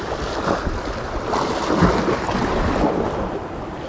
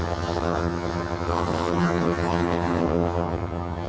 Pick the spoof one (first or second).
second